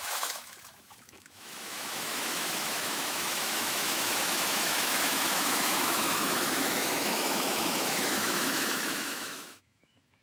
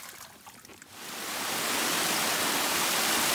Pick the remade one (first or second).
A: first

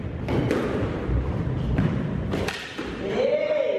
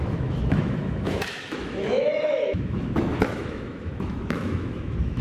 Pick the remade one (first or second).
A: second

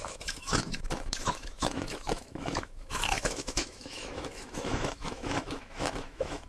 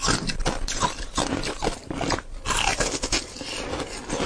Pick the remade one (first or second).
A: first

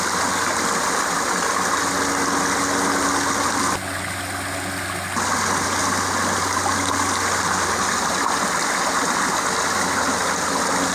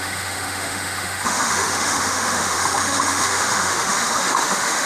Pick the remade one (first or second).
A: second